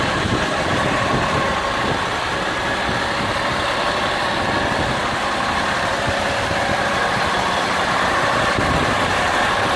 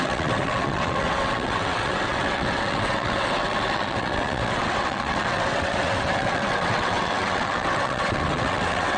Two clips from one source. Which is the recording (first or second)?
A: first